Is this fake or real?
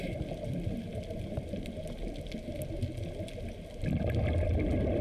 real